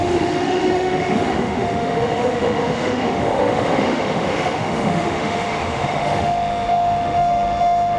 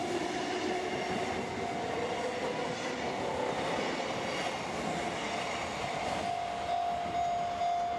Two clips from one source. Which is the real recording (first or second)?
second